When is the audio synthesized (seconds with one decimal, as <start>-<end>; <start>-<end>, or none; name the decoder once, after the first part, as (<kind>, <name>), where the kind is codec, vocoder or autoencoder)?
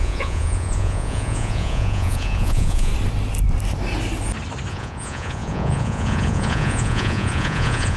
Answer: 0.0-2.9 (vocoder, Vocos); 4.7-8.0